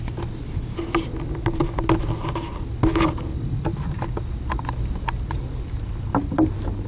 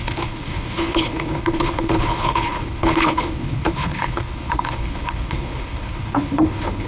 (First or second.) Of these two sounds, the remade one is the second